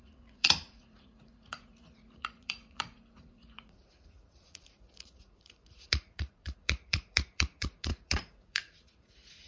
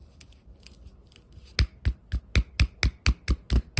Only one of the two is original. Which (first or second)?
second